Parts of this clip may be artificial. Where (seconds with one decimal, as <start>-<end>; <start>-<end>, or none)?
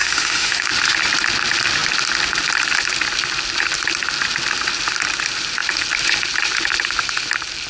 0.0-0.7